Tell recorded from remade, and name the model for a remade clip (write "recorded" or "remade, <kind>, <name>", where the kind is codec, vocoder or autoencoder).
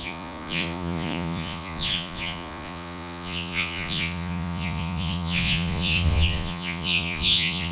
remade, vocoder, Vocos